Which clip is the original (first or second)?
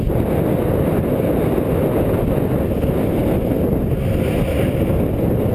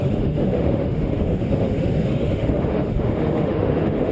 first